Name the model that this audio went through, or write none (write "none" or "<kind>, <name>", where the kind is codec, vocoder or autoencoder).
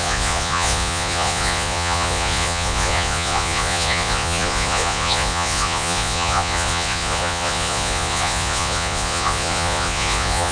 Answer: vocoder, Vocos